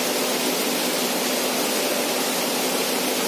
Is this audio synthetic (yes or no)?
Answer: no